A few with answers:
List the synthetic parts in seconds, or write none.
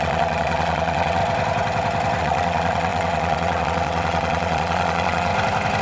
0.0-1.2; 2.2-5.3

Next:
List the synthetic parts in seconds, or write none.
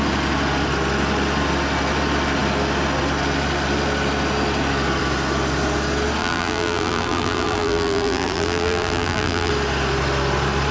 6.2-9.5